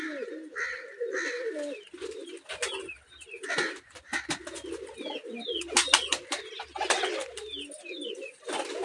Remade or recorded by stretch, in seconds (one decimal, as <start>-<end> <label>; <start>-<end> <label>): 0.0-8.8 recorded